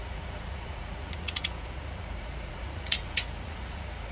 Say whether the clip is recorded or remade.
remade